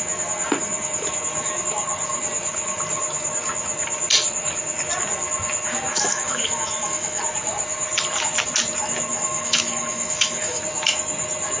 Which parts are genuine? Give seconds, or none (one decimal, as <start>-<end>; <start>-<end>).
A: 0.0-5.9; 7.2-9.1; 10.6-11.6